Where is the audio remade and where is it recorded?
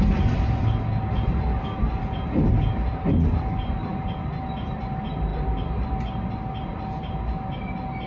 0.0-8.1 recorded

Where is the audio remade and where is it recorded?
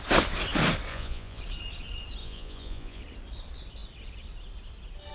0.0-0.9 recorded; 0.9-1.4 remade; 1.4-2.2 recorded; 2.2-3.0 remade; 3.0-5.1 recorded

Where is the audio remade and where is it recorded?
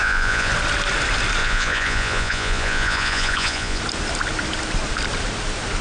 0.0-0.5 remade; 0.5-1.4 recorded; 1.4-3.8 remade; 3.8-5.8 recorded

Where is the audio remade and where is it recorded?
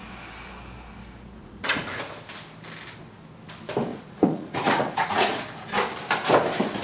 0.0-1.4 recorded; 1.4-2.0 remade; 2.0-3.9 recorded; 3.9-5.4 remade; 5.4-6.8 recorded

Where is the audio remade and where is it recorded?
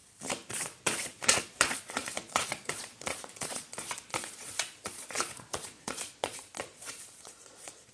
0.0-0.5 recorded; 0.5-7.9 remade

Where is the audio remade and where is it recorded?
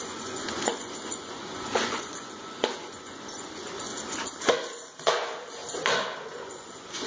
0.0-3.9 remade; 3.9-4.4 recorded; 4.4-5.6 remade; 5.6-6.2 recorded; 6.2-7.1 remade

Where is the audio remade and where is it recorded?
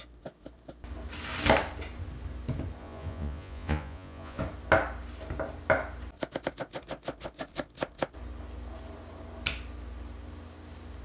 0.0-2.8 recorded; 2.8-4.4 remade; 4.4-11.0 recorded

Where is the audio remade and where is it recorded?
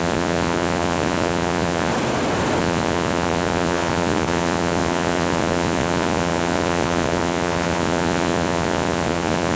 0.0-1.9 remade; 1.9-2.6 recorded; 2.6-9.6 remade